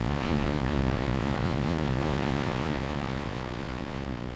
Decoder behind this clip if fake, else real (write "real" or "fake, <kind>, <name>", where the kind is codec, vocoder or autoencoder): fake, vocoder, Vocos